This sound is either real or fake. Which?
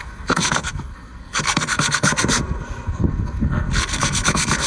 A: fake